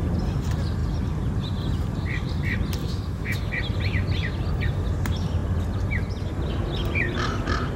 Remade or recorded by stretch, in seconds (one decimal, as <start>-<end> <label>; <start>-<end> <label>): 0.0-2.8 recorded; 2.8-3.5 remade; 3.5-7.8 recorded